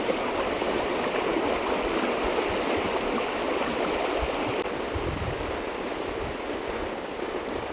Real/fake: real